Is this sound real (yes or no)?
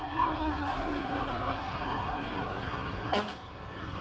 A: no